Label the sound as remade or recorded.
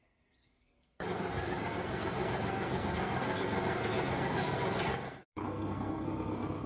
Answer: remade